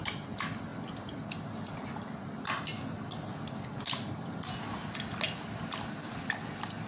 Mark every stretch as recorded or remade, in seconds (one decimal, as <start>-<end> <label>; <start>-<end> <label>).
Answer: 0.0-6.9 recorded